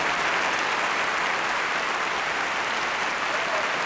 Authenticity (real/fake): fake